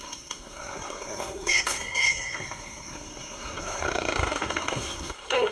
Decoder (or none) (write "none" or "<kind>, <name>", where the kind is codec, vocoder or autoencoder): codec, SNAC